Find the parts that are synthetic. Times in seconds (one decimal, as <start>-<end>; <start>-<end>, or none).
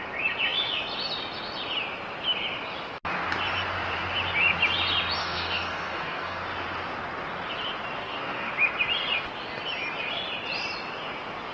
5.2-6.4; 8.0-8.5